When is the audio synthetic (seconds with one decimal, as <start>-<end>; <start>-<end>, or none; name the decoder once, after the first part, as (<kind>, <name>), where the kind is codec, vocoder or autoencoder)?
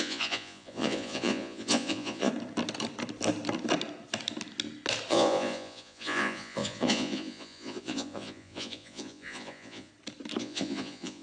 0.0-2.3 (vocoder, Vocos); 5.1-9.9; 10.4-11.2